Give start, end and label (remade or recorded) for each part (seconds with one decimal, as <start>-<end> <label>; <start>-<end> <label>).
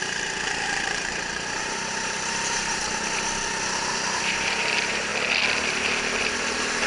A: 0.0-2.8 remade; 2.8-3.8 recorded; 3.8-5.1 remade; 5.1-6.2 recorded; 6.2-6.9 remade